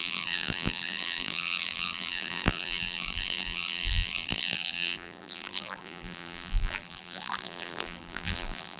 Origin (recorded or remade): remade